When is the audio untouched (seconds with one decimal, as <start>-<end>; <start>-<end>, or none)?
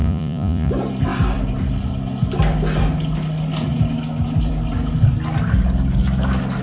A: 0.7-6.6